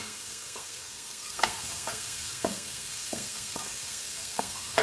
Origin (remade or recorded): remade